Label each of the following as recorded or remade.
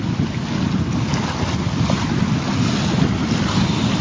recorded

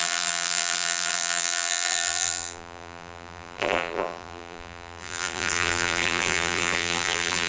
remade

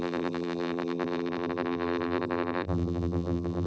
remade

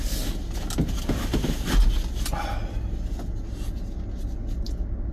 recorded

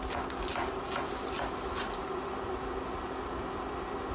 recorded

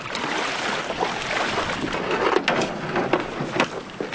recorded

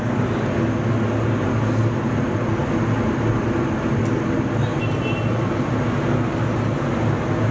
recorded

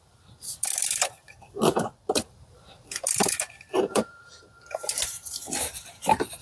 remade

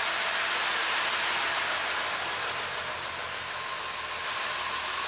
recorded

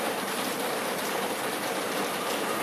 remade